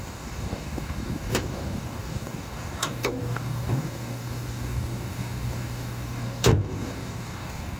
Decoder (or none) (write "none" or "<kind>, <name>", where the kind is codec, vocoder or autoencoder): codec, DAC